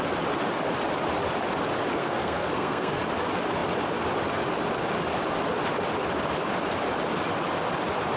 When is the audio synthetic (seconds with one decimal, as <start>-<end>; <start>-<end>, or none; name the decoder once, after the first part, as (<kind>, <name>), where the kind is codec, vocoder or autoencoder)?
2.0-3.0 (codec, SNAC)